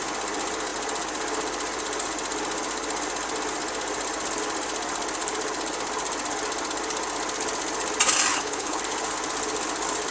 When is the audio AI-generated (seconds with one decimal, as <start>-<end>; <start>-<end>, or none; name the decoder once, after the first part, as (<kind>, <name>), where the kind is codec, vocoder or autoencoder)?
8.3-8.8 (codec, HILCodec)